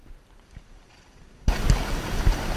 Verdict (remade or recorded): recorded